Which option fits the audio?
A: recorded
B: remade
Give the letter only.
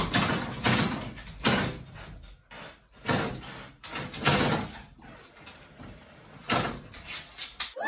A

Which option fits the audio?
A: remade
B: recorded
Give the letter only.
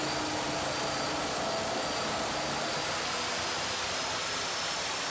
B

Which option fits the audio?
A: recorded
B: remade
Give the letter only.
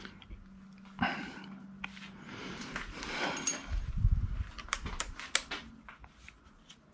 A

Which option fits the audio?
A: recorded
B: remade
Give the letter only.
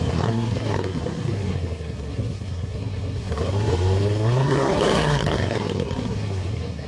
B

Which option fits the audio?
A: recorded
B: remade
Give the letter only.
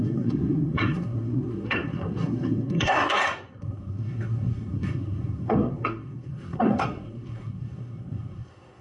B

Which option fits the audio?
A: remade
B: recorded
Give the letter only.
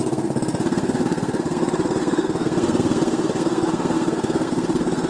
A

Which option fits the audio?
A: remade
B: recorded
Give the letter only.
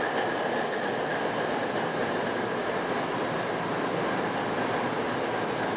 B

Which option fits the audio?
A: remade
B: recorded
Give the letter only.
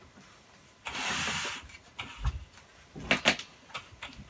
B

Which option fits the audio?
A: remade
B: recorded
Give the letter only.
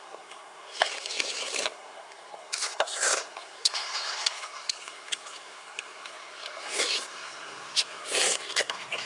A